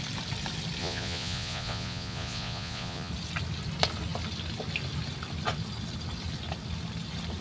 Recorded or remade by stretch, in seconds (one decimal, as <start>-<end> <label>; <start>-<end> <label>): 0.0-0.8 recorded; 0.8-3.1 remade; 3.1-7.4 recorded

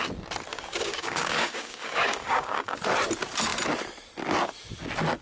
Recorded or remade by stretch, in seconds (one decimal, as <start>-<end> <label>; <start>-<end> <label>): 0.0-0.5 recorded; 0.5-2.8 remade; 2.8-5.2 recorded

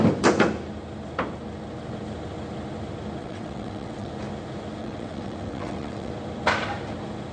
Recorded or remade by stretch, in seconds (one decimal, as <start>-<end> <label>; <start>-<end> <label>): 0.0-3.2 recorded; 3.2-4.1 remade; 4.1-4.8 recorded; 4.8-6.1 remade; 6.1-7.3 recorded

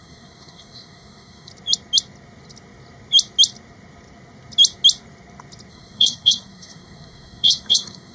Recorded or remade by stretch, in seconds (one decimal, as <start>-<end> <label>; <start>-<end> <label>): 0.0-1.5 remade; 1.5-5.7 recorded; 5.7-8.1 remade

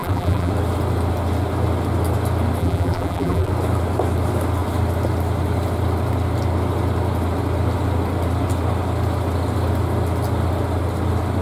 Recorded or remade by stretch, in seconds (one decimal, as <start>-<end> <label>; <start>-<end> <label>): 0.0-0.5 remade; 0.5-2.6 recorded; 2.6-3.5 remade; 3.5-11.4 recorded

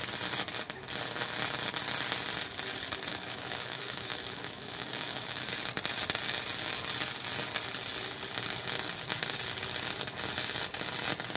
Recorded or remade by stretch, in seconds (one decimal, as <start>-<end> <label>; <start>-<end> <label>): 0.0-3.1 recorded; 3.1-5.5 remade; 5.5-11.4 recorded